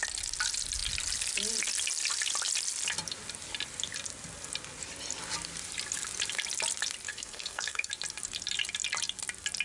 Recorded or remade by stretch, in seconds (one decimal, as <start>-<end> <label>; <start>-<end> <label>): 0.0-7.1 recorded; 7.1-7.9 remade; 7.9-9.6 recorded